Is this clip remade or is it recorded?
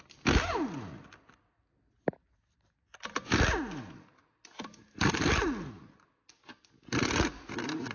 recorded